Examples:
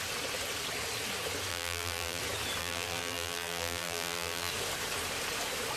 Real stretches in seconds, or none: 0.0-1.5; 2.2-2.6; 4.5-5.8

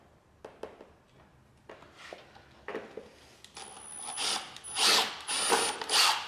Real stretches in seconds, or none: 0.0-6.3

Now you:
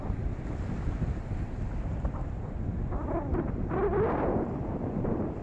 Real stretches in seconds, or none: 0.0-5.4